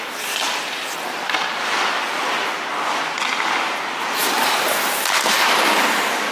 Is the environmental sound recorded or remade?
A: recorded